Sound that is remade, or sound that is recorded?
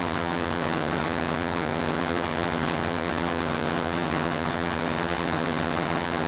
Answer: remade